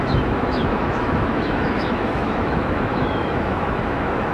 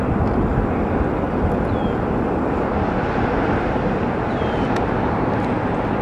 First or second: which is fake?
first